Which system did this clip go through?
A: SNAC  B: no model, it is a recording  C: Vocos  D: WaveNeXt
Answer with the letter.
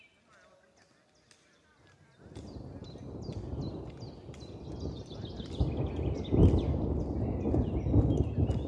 B